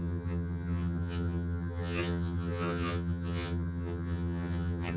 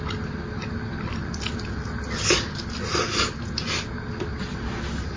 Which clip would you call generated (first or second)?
first